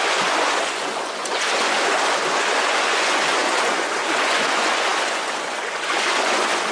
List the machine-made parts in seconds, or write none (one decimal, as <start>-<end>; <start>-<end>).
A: 0.0-6.7

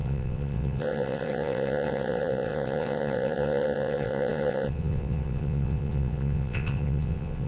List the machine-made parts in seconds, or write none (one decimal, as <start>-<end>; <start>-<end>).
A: 0.0-7.5